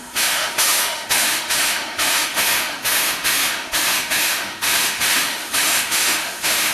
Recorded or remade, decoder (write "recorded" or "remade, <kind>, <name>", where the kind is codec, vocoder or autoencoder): remade, autoencoder, DAC-VAE